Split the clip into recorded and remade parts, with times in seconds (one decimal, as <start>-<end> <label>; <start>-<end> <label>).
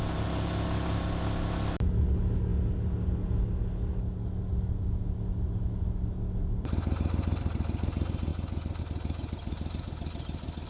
0.0-10.7 recorded